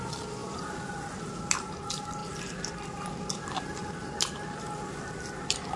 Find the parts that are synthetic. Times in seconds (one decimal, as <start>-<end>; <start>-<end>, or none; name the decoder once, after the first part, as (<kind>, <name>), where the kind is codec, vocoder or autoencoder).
none